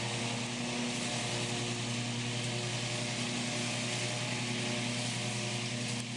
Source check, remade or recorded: recorded